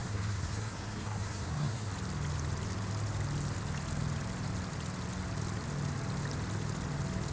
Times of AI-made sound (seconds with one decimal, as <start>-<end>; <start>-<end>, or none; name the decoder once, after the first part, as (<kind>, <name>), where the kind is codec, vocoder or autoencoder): 0.0-1.9 (codec, SNAC)